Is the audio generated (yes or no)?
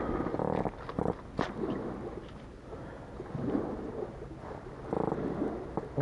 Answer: no